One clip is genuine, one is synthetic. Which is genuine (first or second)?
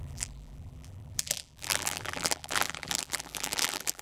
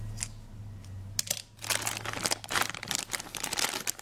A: second